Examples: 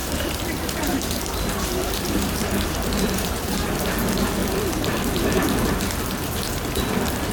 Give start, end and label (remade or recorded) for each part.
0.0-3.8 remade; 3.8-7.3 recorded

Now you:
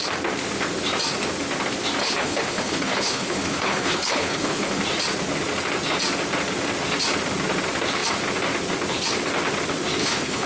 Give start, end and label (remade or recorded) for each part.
0.0-2.0 recorded; 2.0-4.8 remade; 4.8-10.0 recorded; 10.0-10.5 remade

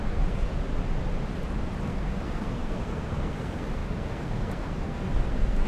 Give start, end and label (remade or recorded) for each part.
0.0-0.5 remade; 0.5-1.8 recorded; 1.8-5.7 remade